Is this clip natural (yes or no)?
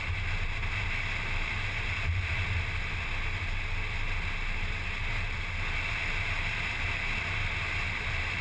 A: yes